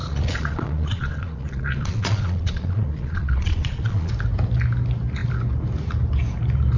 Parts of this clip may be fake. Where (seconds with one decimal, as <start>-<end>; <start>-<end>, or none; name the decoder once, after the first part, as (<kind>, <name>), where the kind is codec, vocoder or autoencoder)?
0.0-4.1 (vocoder, Vocos)